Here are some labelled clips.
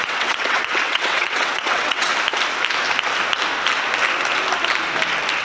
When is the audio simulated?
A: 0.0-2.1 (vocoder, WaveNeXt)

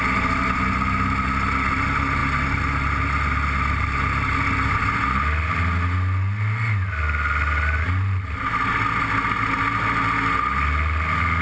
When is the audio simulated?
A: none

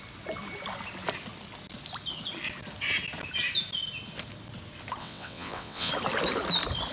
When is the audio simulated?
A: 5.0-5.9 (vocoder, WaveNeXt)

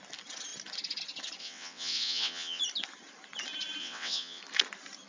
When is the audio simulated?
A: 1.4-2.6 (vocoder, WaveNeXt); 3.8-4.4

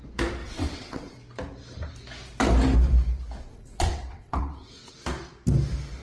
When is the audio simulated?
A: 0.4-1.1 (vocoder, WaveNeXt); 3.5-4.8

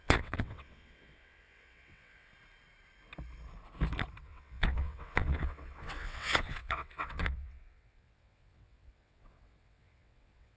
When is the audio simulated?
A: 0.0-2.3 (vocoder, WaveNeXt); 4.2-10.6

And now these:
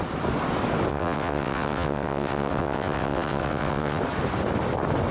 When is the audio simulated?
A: 0.9-4.0 (vocoder, WaveNeXt)